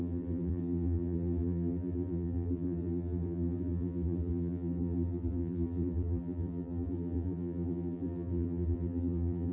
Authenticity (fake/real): fake